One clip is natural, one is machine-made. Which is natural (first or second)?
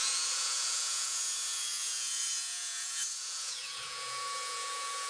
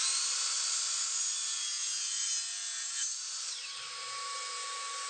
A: second